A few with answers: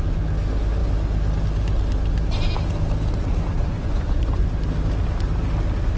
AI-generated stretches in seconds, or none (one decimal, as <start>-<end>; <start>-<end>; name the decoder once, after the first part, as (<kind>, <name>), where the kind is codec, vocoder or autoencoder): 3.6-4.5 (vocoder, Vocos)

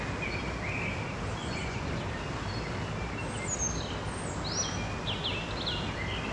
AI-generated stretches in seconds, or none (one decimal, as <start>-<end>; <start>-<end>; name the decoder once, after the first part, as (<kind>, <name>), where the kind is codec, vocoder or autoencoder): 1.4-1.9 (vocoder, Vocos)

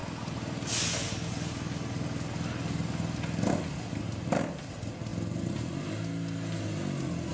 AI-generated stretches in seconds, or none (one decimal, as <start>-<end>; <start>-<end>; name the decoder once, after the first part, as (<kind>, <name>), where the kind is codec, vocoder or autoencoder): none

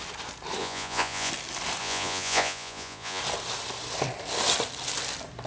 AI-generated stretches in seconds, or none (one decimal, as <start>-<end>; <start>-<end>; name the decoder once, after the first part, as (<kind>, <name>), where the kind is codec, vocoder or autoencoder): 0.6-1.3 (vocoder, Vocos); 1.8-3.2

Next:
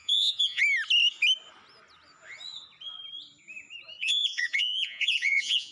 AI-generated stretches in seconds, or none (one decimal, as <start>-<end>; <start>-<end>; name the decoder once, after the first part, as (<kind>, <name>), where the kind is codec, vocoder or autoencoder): 0.0-0.6 (vocoder, Vocos); 4.0-5.7

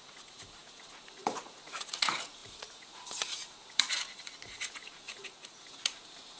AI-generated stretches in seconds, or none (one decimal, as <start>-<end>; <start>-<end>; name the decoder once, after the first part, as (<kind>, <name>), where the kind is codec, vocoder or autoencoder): 0.0-6.4 (vocoder, Vocos)

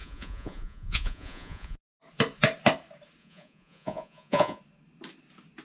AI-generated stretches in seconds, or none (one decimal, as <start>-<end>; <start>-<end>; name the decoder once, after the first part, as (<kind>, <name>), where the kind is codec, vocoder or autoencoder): 0.0-1.8 (vocoder, Vocos); 3.2-4.6